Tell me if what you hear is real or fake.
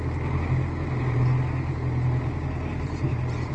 real